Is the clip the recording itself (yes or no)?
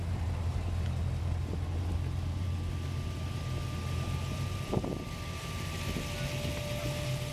yes